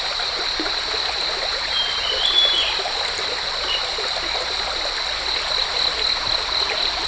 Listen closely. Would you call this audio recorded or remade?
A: recorded